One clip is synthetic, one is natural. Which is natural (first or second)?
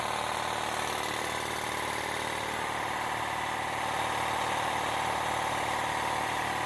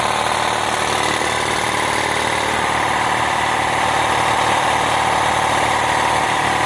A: first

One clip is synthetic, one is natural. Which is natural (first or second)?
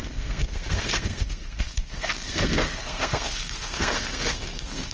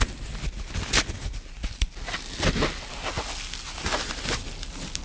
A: second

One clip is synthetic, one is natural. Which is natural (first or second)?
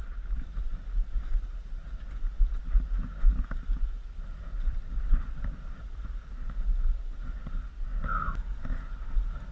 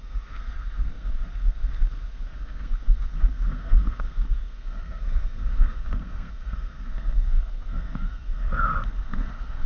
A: first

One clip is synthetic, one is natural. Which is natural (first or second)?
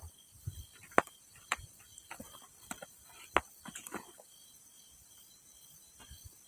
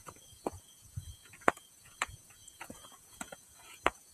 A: first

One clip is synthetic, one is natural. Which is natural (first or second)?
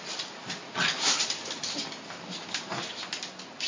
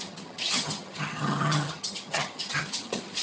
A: first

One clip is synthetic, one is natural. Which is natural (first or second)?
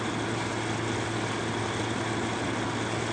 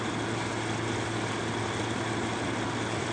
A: first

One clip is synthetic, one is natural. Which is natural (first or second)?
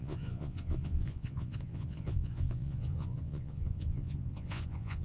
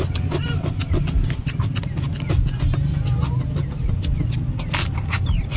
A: second